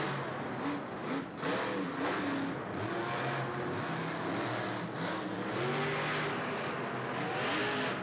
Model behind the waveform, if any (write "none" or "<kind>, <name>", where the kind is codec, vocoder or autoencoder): none